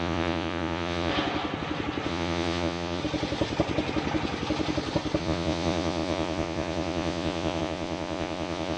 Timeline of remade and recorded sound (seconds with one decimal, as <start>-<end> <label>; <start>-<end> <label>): 0.0-1.1 remade; 1.1-2.1 recorded; 2.1-3.0 remade; 3.0-5.2 recorded; 5.2-8.8 remade